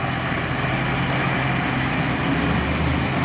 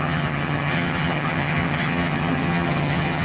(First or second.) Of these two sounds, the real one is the first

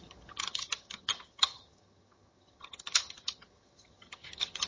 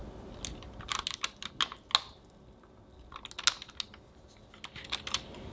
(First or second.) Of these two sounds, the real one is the second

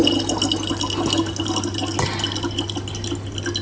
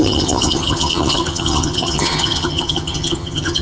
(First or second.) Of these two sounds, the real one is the first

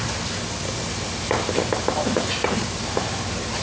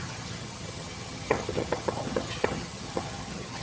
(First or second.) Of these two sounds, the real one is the first